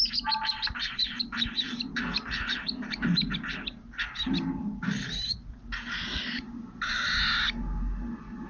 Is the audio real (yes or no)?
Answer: yes